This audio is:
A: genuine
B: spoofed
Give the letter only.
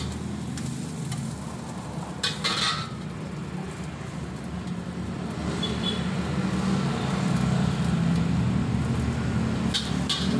A